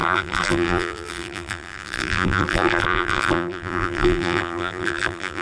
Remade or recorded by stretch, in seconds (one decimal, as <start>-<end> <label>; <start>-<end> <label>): 0.0-5.4 remade